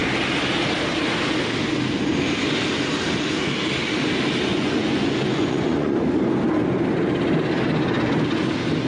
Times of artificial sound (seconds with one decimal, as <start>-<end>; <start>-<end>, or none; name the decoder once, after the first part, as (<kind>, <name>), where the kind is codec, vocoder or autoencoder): 4.5-6.0 (vocoder, Vocos)

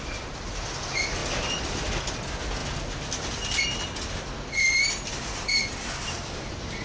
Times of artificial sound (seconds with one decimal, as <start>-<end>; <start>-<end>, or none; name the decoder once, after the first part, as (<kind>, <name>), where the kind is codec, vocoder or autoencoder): none

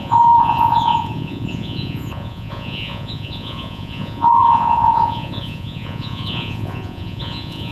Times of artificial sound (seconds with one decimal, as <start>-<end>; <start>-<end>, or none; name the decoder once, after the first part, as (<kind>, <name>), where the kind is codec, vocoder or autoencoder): 0.0-7.7 (vocoder, Vocos)